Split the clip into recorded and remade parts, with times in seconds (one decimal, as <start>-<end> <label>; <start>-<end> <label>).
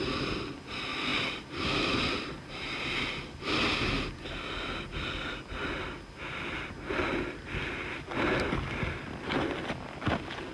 0.0-10.5 recorded